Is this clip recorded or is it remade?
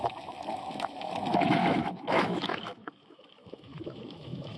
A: remade